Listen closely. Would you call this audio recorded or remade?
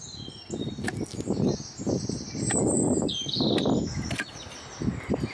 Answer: recorded